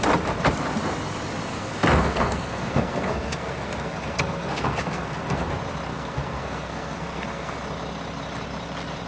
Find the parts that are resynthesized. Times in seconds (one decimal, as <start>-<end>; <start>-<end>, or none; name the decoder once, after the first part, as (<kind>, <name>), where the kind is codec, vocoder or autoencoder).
1.5-5.5 (codec, SNAC); 5.9-7.6